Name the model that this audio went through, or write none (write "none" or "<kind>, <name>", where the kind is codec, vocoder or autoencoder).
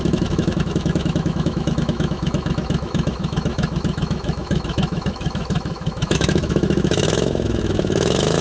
autoencoder, DAC-VAE